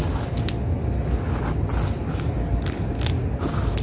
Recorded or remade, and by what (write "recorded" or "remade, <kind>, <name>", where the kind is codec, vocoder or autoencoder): recorded